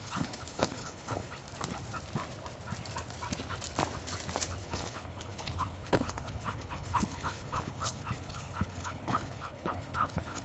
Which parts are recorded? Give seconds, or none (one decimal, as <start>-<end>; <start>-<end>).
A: 1.4-4.6